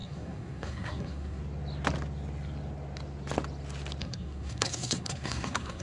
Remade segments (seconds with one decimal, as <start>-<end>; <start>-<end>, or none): 0.0-1.4; 4.0-5.8